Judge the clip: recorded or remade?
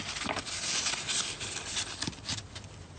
recorded